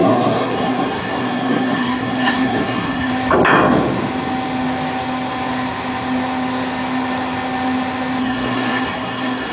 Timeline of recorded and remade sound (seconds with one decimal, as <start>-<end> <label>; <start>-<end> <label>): 0.0-3.1 remade; 3.1-8.2 recorded; 8.2-9.5 remade